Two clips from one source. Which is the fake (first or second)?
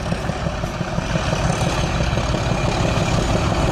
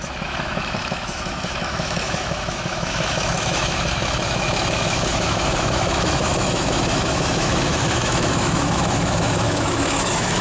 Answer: second